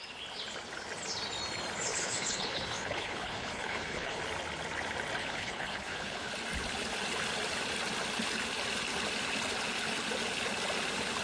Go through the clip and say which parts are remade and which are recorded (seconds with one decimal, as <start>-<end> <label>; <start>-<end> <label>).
0.0-1.9 recorded; 1.9-4.2 remade; 4.2-5.2 recorded; 5.2-6.3 remade; 6.3-11.2 recorded